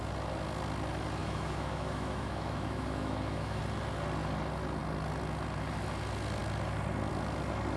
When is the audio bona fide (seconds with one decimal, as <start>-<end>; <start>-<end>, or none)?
0.0-1.2; 3.6-7.8